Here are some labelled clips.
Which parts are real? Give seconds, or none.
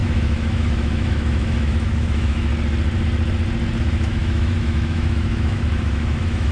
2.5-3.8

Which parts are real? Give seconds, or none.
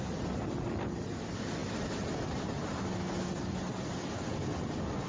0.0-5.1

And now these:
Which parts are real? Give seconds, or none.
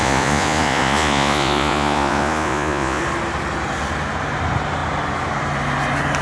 3.0-6.2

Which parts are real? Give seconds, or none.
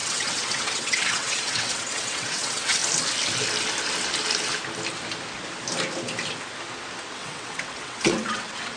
2.8-7.1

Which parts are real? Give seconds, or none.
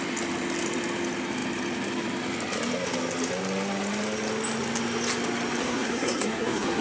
0.0-5.6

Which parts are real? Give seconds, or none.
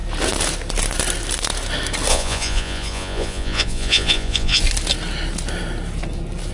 0.0-2.1; 4.6-6.5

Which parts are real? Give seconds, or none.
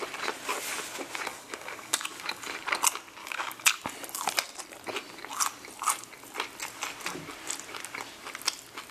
0.0-1.3; 2.4-3.2; 3.8-8.9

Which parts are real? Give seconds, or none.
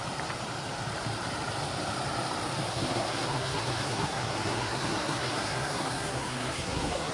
0.0-2.7